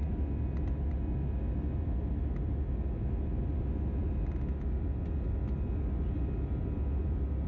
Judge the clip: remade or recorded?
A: recorded